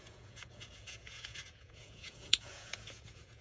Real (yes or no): no